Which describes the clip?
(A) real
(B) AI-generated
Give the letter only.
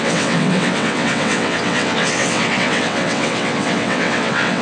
B